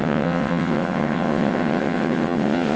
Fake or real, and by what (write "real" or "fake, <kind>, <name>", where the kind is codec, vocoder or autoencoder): fake, vocoder, WaveNeXt